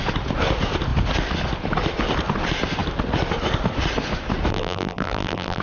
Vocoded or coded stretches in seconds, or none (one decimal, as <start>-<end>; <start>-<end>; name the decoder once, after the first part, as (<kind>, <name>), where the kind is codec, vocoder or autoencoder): 4.5-5.6 (vocoder, BigVGAN v2)